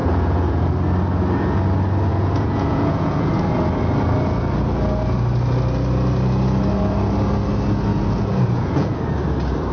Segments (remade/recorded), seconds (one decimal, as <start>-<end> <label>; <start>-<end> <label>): 0.0-0.7 remade; 0.7-2.1 recorded; 2.1-3.3 remade; 3.3-7.9 recorded; 7.9-9.0 remade; 9.0-9.7 recorded